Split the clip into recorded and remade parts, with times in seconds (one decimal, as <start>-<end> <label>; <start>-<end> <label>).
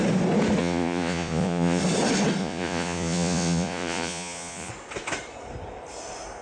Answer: 0.0-0.6 recorded; 0.6-1.8 remade; 1.8-2.4 recorded; 2.4-4.7 remade; 4.7-6.4 recorded